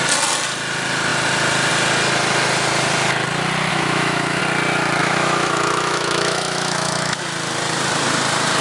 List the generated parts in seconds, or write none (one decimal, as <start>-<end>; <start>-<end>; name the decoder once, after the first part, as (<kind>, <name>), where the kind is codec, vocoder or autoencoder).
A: 3.7-4.4 (autoencoder, DAC-VAE); 5.0-7.2